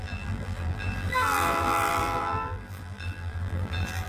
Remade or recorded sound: remade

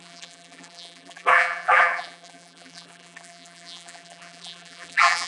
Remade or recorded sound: remade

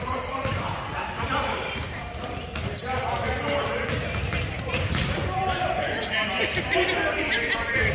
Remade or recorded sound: remade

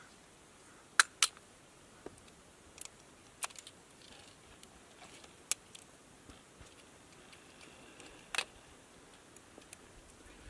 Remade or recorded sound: recorded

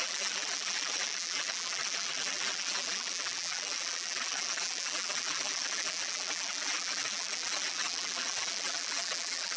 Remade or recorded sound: remade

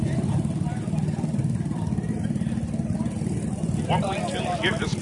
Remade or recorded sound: remade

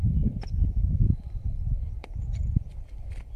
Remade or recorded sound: remade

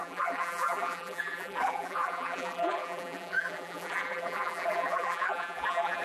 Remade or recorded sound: remade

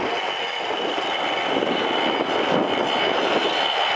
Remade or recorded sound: recorded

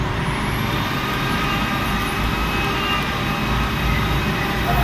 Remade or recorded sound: recorded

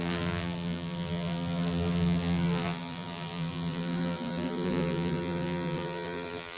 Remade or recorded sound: remade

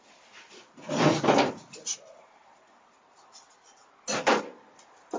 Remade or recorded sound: recorded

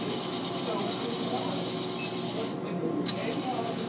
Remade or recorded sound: remade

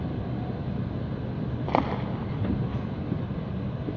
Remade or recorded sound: recorded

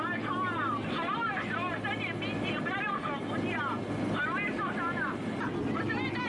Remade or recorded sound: recorded